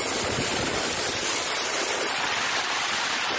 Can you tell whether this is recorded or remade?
recorded